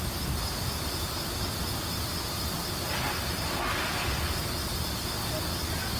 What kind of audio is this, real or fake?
real